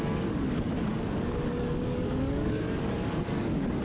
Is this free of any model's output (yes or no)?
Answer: no